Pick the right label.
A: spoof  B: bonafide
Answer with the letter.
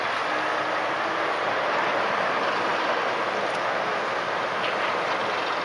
B